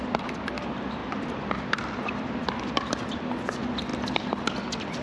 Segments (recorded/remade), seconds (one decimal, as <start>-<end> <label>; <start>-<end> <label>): 0.0-1.0 recorded; 1.0-3.2 remade; 3.2-5.0 recorded